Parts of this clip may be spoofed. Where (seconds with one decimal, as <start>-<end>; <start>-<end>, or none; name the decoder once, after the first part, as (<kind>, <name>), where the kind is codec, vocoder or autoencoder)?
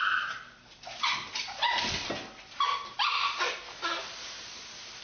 none